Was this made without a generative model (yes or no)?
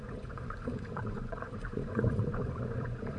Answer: no